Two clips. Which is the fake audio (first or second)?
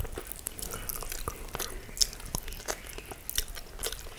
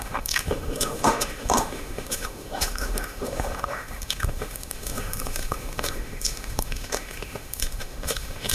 second